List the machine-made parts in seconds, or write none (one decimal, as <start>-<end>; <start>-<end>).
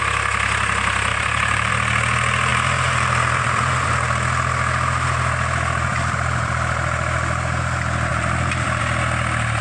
1.1-1.7; 2.5-3.9; 5.9-6.5; 8.1-8.8